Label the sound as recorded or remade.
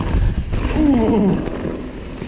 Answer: recorded